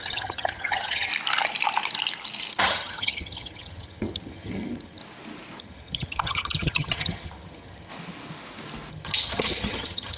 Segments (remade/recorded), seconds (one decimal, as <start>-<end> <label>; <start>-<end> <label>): 0.0-1.1 remade; 1.1-2.6 recorded; 2.6-5.0 remade; 5.0-5.6 recorded; 5.6-7.9 remade; 7.9-8.9 recorded; 8.9-10.2 remade